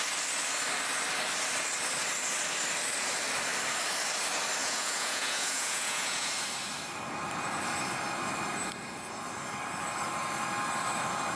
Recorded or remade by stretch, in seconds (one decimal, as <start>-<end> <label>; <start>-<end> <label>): 0.0-4.6 recorded; 4.6-6.3 remade; 6.3-11.4 recorded